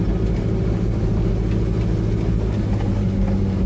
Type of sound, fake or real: real